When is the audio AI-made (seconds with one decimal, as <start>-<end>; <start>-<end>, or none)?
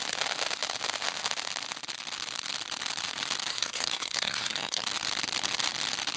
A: 3.5-4.8